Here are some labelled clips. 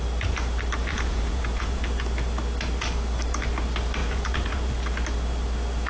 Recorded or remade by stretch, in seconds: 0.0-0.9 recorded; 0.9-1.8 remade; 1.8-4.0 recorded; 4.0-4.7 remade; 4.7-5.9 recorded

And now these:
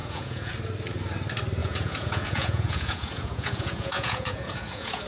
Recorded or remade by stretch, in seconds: 0.0-0.5 remade; 0.5-1.6 recorded; 1.6-5.1 remade

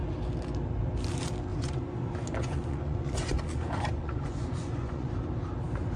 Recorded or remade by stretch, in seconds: 0.0-1.5 recorded; 1.5-5.1 remade; 5.1-6.0 recorded

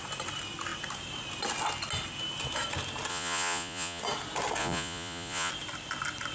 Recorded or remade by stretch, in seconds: 0.0-3.1 recorded; 3.1-4.0 remade; 4.0-4.6 recorded; 4.6-5.5 remade; 5.5-6.3 recorded

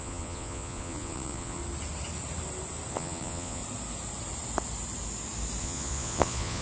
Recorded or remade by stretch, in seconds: 0.0-1.6 remade; 1.6-2.9 recorded; 2.9-3.6 remade; 3.6-5.6 recorded; 5.6-6.6 remade

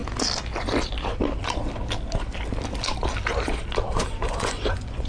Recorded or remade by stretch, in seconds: 0.0-4.1 recorded; 4.1-5.1 remade

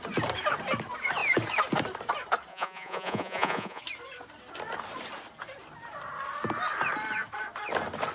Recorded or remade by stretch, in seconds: 0.0-2.5 recorded; 2.5-3.8 remade; 3.8-8.1 recorded